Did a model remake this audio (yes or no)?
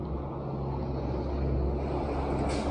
no